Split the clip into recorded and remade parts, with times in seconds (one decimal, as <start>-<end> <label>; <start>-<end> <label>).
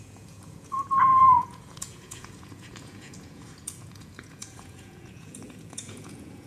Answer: 0.0-6.5 remade